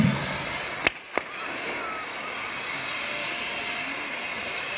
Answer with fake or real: real